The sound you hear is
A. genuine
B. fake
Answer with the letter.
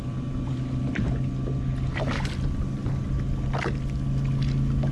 A